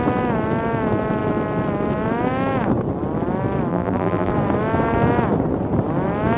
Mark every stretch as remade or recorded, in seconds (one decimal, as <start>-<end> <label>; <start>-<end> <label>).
0.0-3.7 recorded; 3.7-4.3 remade; 4.3-6.4 recorded